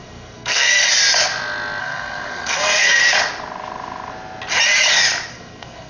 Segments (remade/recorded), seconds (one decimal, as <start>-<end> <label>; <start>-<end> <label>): 0.0-0.7 remade; 0.7-1.8 recorded; 1.8-3.0 remade; 3.0-5.3 recorded; 5.3-5.9 remade